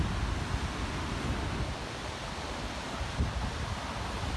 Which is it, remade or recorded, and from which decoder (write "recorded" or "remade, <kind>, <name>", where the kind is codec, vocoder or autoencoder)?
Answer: recorded